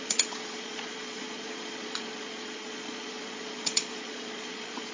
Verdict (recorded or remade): remade